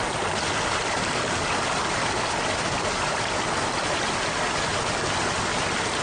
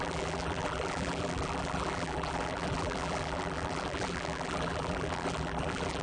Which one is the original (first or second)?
first